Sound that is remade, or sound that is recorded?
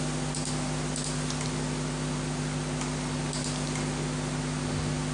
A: recorded